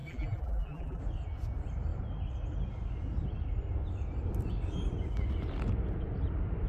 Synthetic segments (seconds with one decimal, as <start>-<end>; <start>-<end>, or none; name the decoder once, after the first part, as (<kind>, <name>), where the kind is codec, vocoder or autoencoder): 0.0-1.0 (vocoder, BigVGAN v2)

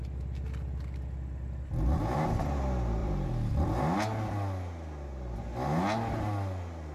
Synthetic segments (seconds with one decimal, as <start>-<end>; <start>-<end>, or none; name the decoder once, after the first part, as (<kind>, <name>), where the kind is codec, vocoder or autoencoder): 3.0-3.7 (vocoder, BigVGAN v2)

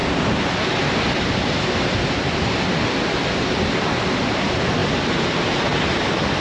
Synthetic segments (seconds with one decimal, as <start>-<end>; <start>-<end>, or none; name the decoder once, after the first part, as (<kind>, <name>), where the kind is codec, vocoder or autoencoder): none

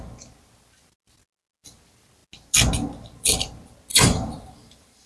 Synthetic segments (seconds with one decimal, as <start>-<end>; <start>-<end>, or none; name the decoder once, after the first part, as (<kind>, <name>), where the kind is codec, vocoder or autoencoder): 3.9-5.1 (vocoder, BigVGAN v2)